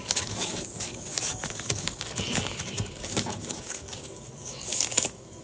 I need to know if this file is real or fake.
fake